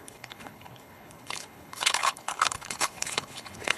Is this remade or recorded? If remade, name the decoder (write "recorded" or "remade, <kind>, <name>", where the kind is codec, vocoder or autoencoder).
remade, codec, HILCodec